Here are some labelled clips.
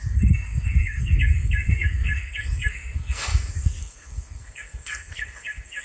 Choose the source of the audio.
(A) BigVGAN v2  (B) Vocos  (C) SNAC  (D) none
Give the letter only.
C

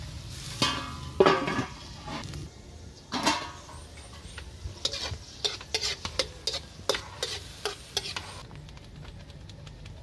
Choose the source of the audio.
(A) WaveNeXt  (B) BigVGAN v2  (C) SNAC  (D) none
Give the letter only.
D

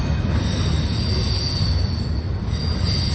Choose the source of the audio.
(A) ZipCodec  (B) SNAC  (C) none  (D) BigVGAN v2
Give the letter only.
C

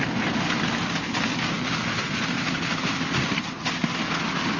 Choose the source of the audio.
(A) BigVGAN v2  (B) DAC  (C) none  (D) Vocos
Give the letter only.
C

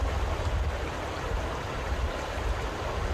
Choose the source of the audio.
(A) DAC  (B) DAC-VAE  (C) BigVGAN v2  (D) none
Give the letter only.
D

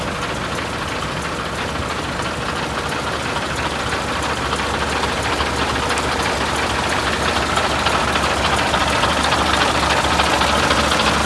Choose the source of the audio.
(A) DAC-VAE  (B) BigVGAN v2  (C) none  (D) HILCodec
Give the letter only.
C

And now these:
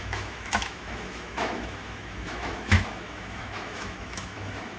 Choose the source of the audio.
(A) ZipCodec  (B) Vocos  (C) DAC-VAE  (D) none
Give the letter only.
C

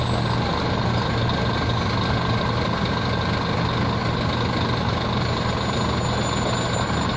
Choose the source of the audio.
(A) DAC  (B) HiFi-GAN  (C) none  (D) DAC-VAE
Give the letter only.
C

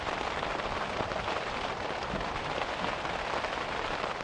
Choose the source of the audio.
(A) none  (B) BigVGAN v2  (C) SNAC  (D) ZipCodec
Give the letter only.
A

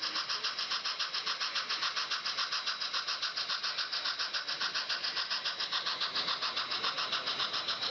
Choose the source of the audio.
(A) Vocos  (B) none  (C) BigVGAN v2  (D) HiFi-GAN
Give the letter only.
B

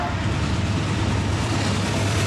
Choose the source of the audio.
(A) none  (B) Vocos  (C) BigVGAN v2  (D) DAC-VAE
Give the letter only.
C